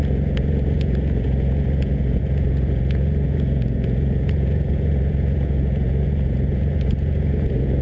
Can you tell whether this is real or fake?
fake